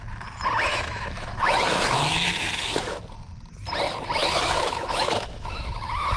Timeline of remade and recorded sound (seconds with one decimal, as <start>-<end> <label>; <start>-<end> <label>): 0.0-0.7 recorded; 0.7-3.0 remade; 3.0-4.2 recorded; 4.2-6.2 remade